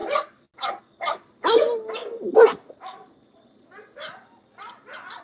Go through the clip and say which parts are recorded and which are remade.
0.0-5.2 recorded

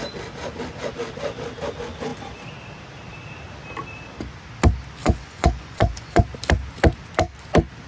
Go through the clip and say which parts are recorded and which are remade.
0.0-5.0 recorded; 5.0-6.2 remade; 6.2-7.9 recorded

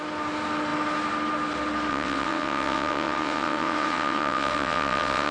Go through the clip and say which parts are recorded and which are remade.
0.0-1.9 recorded; 1.9-5.3 remade

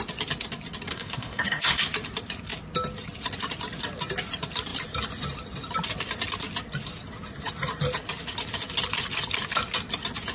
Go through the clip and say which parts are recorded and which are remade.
0.0-0.9 recorded; 0.9-1.8 remade; 1.8-10.3 recorded